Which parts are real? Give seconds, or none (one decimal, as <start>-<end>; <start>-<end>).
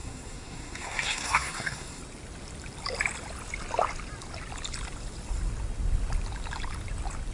2.0-7.3